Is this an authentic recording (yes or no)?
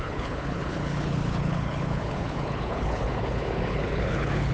no